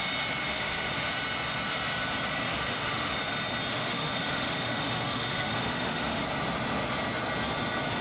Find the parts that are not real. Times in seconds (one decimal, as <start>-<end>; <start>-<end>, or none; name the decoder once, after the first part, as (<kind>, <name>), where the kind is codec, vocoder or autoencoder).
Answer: 0.4-1.1 (autoencoder, DAC-VAE); 2.5-3.2; 3.7-6.2